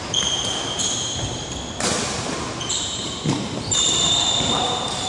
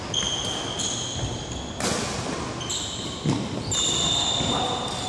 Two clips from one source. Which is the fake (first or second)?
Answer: first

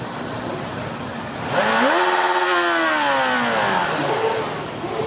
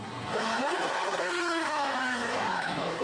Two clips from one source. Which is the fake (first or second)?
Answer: second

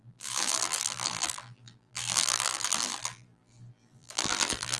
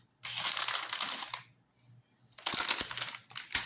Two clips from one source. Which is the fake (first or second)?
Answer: first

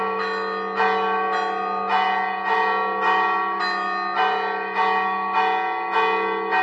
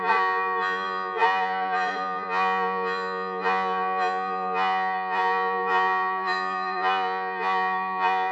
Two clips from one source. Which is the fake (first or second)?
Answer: second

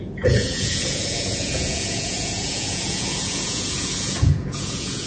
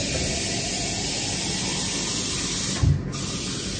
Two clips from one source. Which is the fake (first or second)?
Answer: first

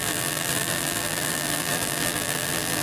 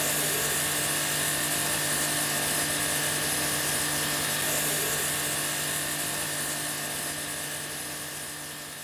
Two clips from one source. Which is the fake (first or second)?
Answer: first